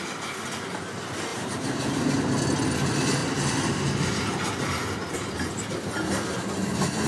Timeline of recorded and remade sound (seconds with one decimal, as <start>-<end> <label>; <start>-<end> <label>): 0.0-1.3 recorded; 1.3-2.2 remade; 2.2-3.2 recorded; 3.2-3.7 remade; 3.7-7.1 recorded